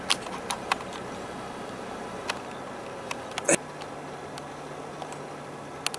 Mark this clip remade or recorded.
recorded